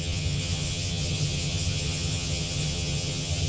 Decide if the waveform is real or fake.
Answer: fake